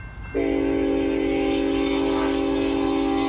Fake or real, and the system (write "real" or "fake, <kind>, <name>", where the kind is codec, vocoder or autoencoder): real